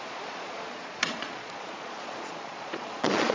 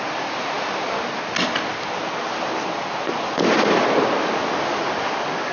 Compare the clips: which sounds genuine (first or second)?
second